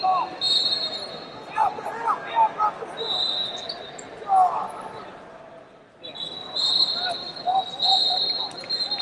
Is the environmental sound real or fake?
real